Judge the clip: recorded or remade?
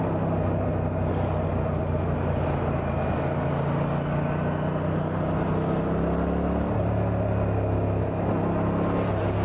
recorded